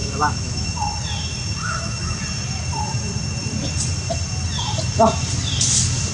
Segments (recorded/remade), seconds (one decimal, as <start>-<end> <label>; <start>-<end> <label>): 0.0-0.7 remade; 0.7-1.6 recorded; 1.6-2.2 remade; 2.2-6.1 recorded